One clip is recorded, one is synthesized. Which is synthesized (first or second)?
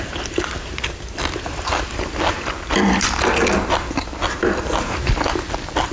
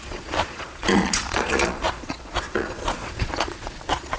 second